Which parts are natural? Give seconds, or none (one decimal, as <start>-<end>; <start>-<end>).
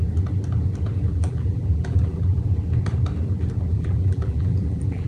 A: 0.0-1.1; 2.4-3.7